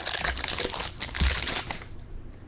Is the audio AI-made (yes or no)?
no